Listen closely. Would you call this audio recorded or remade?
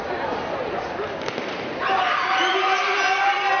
recorded